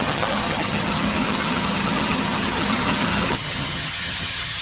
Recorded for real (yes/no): no